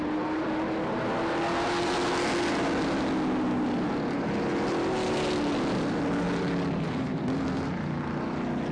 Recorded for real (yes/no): yes